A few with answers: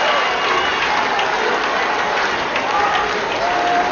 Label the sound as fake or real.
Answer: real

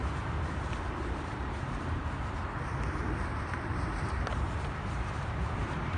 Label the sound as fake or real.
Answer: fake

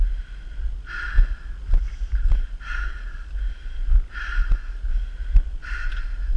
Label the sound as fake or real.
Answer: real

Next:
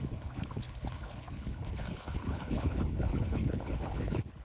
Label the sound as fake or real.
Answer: fake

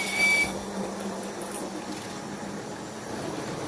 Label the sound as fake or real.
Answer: real